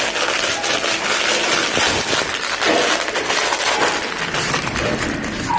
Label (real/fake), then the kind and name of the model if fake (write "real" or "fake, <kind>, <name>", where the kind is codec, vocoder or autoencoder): real